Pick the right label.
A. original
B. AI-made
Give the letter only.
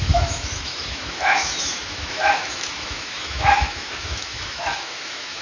B